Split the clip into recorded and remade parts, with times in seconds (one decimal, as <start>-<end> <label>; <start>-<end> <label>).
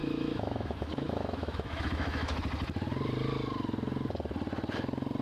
0.0-2.4 remade; 2.4-5.2 recorded